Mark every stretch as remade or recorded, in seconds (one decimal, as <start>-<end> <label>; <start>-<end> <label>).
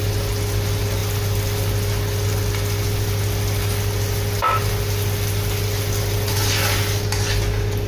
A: 0.0-7.9 recorded